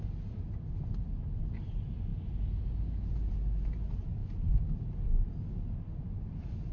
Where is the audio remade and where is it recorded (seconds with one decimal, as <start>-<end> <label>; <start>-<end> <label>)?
0.0-6.7 recorded